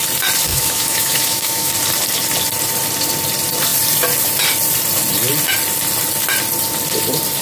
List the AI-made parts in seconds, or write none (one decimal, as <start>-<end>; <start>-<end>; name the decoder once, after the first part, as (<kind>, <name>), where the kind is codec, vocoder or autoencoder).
0.5-1.7 (autoencoder, DAC-VAE)

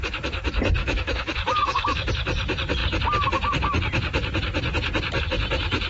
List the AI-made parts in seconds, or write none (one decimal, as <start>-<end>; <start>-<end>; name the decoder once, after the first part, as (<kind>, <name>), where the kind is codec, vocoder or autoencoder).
0.8-2.1 (autoencoder, DAC-VAE)

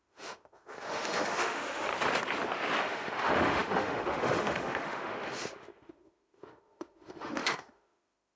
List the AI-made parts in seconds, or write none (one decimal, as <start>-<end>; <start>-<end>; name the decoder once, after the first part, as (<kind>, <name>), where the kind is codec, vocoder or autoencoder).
0.0-1.9 (autoencoder, DAC-VAE); 2.8-8.4

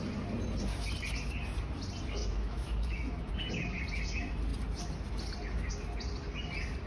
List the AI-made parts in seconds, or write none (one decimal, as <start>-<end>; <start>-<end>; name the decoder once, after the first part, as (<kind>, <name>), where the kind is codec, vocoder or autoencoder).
2.2-3.3 (autoencoder, DAC-VAE)

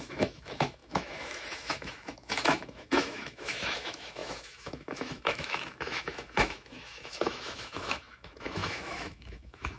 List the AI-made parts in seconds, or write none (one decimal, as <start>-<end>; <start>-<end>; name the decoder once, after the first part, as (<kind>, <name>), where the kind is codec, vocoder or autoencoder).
0.0-9.8 (autoencoder, DAC-VAE)

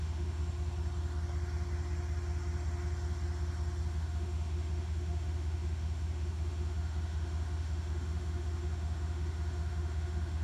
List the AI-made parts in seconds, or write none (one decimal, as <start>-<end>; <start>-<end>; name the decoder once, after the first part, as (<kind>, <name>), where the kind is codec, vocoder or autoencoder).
0.0-0.4 (autoencoder, DAC-VAE); 3.9-10.4

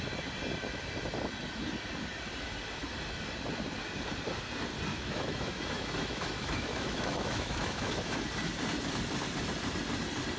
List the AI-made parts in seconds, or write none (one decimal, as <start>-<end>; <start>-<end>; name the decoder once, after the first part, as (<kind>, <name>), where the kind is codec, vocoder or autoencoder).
4.9-8.2 (autoencoder, DAC-VAE)